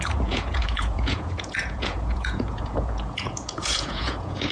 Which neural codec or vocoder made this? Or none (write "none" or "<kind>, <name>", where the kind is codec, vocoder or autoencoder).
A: vocoder, Vocos